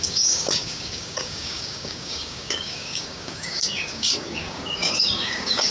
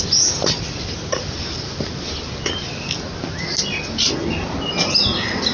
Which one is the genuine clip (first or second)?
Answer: second